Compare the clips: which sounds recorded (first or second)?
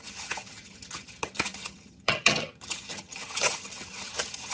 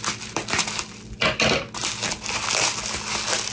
second